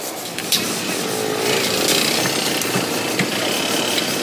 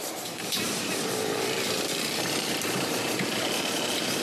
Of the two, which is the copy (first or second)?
second